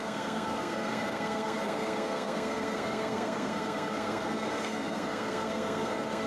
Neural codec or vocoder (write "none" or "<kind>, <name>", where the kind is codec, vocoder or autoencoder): codec, SNAC